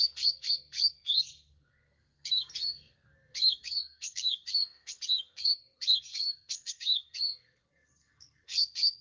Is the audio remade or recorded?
remade